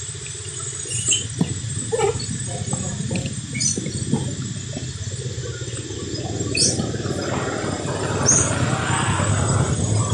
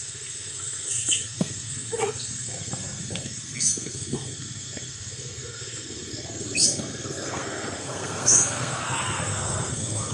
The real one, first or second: first